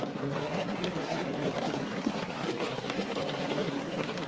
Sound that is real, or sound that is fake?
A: fake